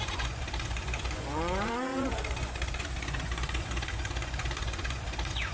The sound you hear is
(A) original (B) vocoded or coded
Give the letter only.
B